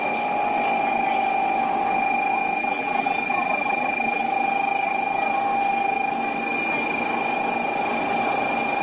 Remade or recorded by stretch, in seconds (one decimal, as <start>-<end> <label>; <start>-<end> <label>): 0.0-2.6 recorded; 2.6-4.2 remade; 4.2-8.8 recorded